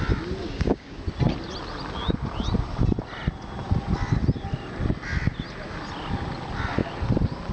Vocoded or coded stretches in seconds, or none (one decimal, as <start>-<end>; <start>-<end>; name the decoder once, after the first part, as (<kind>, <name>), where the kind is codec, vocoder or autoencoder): 0.4-1.0 (codec, DAC)